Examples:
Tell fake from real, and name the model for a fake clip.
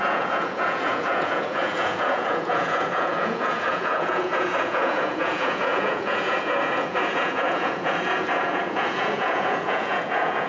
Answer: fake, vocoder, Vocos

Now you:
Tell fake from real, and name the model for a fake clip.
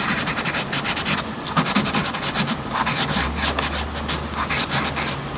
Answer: real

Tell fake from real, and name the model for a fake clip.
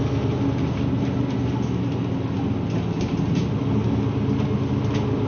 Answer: real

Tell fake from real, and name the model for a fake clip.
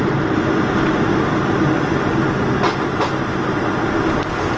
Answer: real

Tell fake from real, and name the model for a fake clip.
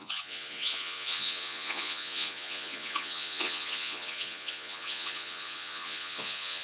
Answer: fake, vocoder, Vocos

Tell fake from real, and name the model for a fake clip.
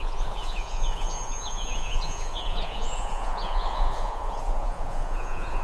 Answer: fake, vocoder, Vocos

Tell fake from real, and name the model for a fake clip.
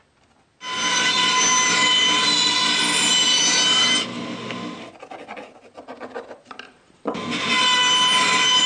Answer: real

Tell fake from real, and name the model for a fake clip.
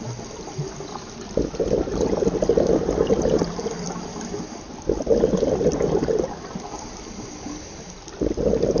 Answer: real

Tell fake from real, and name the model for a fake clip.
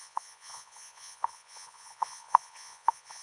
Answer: fake, vocoder, Vocos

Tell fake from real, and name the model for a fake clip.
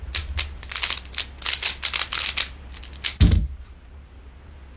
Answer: real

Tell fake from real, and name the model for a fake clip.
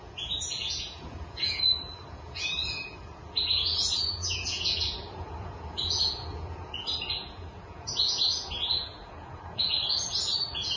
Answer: fake, vocoder, Vocos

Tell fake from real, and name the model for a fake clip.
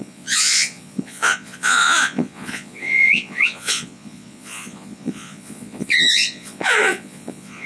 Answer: fake, vocoder, Vocos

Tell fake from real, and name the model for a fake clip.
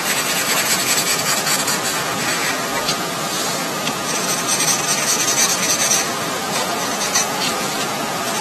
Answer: fake, vocoder, Vocos